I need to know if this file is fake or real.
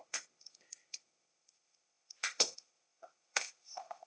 fake